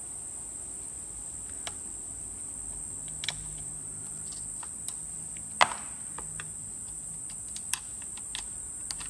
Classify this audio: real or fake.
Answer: real